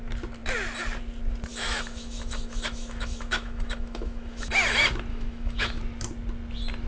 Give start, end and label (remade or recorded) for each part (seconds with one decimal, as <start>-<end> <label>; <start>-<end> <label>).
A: 0.0-1.5 recorded; 1.5-4.5 remade; 4.5-5.1 recorded; 5.1-5.8 remade; 5.8-6.9 recorded